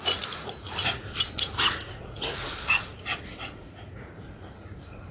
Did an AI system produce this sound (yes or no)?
yes